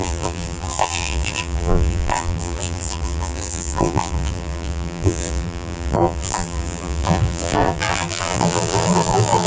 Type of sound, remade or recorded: remade